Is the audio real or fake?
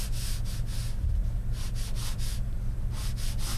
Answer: real